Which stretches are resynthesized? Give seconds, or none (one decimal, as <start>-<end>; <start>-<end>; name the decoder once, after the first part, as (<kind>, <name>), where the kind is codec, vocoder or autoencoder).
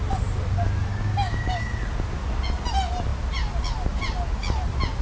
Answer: 0.9-1.7 (codec, DAC)